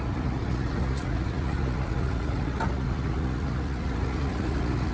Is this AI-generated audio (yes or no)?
yes